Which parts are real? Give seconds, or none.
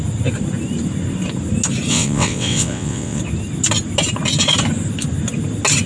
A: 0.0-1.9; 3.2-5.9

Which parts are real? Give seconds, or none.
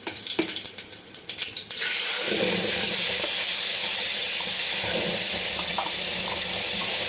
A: none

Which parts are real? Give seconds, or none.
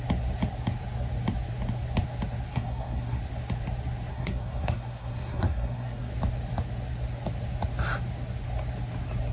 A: 0.0-2.5; 3.2-4.1; 6.1-9.3